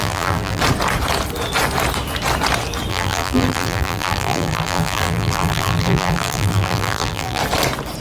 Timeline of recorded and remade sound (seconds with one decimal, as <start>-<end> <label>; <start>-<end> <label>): 0.0-0.6 remade; 0.6-2.9 recorded; 2.9-7.4 remade; 7.4-8.0 recorded